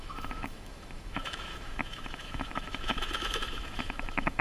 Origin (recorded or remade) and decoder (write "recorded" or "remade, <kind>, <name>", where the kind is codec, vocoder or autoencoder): remade, autoencoder, DAC-VAE